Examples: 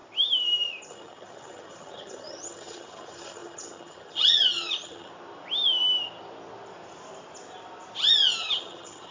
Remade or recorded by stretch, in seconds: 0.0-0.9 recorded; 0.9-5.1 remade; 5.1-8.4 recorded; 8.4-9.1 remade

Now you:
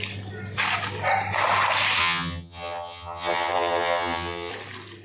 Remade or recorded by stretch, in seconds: 0.0-2.0 recorded; 2.0-4.5 remade; 4.5-5.0 recorded

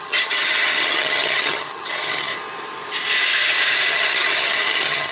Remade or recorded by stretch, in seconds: 0.0-2.3 remade; 2.3-3.9 recorded; 3.9-5.1 remade

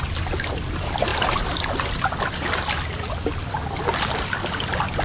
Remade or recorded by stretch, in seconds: 0.0-5.0 recorded